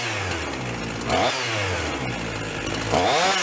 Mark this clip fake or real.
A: real